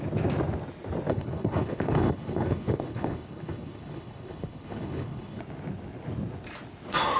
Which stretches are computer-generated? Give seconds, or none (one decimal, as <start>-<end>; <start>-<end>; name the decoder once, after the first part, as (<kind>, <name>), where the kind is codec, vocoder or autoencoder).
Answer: 1.1-5.4 (codec, HILCodec)